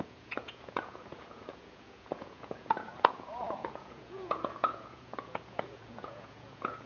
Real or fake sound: fake